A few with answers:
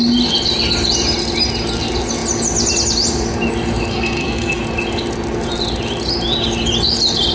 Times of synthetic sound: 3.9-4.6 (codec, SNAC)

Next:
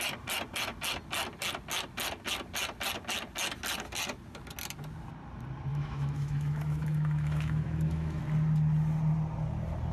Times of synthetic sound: 5.7-8.2 (autoencoder, DAC-VAE)

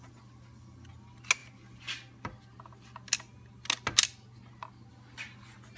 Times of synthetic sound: none

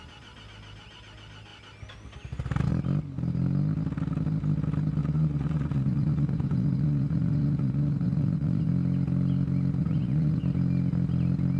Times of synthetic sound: 5.0-8.7 (vocoder, Vocos); 9.8-10.4